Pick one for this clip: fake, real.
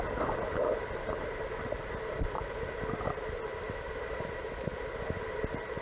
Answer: real